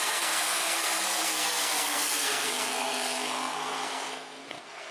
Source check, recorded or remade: remade